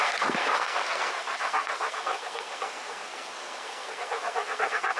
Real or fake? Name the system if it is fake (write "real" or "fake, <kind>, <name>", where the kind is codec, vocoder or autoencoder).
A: fake, codec, SNAC